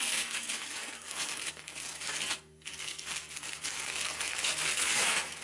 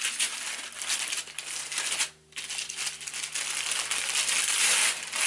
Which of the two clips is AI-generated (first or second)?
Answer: first